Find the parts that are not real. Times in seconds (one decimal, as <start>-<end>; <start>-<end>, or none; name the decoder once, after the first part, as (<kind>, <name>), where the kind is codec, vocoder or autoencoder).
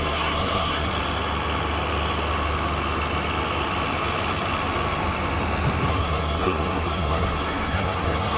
0.0-0.9 (codec, SNAC); 5.9-8.4